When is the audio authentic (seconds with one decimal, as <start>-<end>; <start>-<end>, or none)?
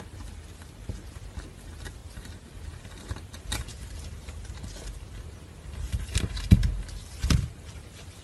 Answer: 0.0-2.0; 2.8-3.7; 5.3-8.2